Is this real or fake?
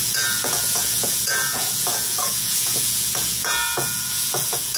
fake